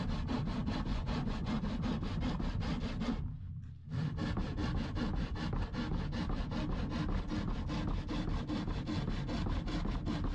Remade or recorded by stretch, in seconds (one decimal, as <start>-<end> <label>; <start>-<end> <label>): 0.0-0.9 recorded; 0.9-1.5 remade; 1.5-10.3 recorded